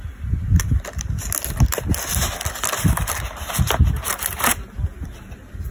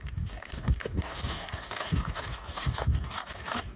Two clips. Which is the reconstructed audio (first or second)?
second